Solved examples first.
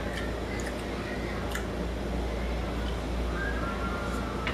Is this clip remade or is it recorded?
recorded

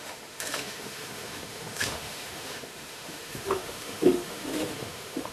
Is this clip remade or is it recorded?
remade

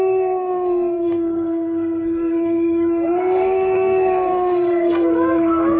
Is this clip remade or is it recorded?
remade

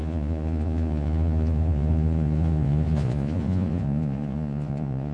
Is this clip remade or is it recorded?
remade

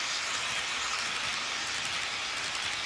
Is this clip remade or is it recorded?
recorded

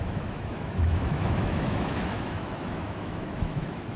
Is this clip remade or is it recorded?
remade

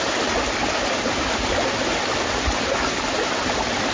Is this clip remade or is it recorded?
recorded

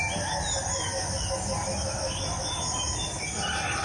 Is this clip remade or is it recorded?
recorded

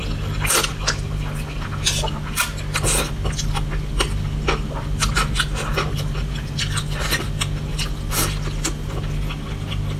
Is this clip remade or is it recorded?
recorded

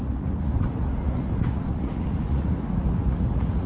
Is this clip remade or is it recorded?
remade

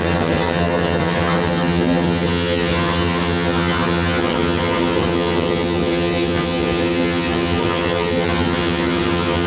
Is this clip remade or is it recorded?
remade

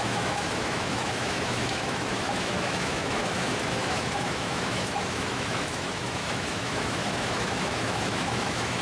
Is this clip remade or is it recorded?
remade